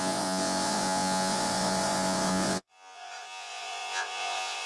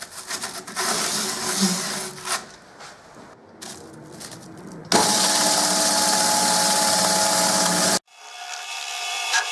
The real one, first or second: second